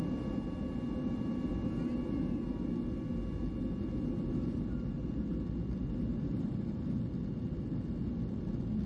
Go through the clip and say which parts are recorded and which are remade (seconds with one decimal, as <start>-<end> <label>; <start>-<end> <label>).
0.0-6.1 recorded; 6.1-6.9 remade; 6.9-8.9 recorded